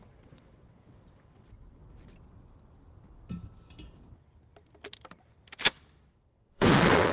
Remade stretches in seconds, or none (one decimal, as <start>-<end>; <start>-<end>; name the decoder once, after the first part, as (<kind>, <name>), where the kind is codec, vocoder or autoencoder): 0.0-1.8 (vocoder, WaveNeXt); 6.1-7.1